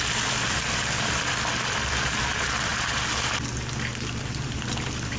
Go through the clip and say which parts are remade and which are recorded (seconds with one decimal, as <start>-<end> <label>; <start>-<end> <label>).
0.0-2.7 remade; 2.7-4.2 recorded; 4.2-5.2 remade